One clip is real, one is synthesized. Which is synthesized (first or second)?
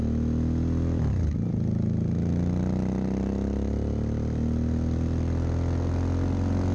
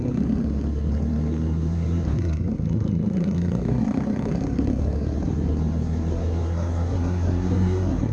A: second